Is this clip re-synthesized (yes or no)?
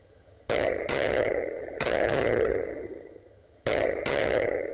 yes